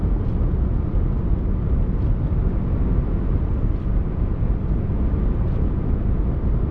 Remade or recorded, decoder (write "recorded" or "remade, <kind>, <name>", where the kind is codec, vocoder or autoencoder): recorded